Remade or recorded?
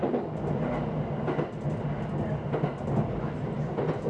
recorded